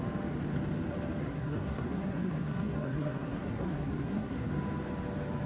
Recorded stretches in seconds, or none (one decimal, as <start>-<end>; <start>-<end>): 0.0-1.2; 4.5-5.5